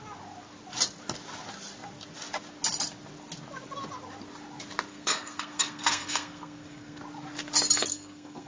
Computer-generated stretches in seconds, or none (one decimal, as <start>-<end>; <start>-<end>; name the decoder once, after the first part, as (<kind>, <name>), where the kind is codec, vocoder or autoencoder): 4.9-7.0 (codec, SNAC); 7.9-8.5